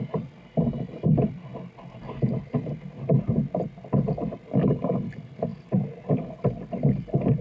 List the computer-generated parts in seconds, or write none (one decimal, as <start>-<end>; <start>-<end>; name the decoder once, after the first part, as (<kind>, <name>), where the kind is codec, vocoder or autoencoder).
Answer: none